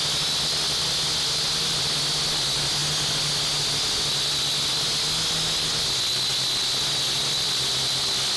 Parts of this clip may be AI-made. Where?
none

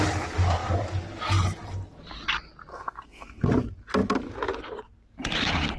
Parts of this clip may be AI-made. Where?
2.7-3.5

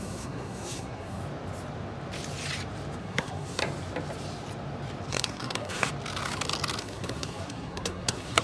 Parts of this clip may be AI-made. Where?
0.0-1.2; 3.0-3.6; 5.1-5.9; 6.8-8.4